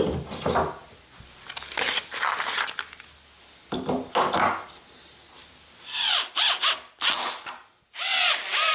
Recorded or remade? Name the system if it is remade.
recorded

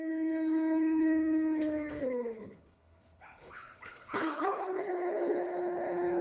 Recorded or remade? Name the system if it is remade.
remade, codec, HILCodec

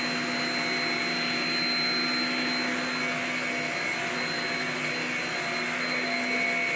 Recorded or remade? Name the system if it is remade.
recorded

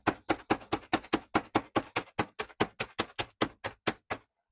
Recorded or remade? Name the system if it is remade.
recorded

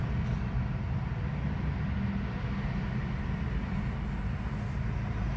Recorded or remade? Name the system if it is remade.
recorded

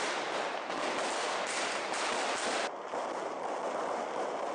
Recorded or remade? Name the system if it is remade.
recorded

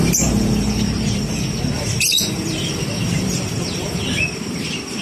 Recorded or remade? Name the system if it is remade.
remade, vocoder, BigVGAN v2